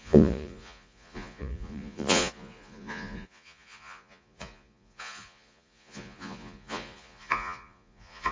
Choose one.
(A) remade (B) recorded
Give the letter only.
A